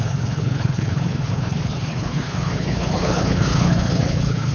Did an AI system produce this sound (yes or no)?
yes